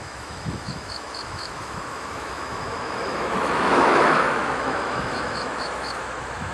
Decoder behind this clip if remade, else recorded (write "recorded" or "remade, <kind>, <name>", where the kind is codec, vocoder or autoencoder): remade, autoencoder, DAC-VAE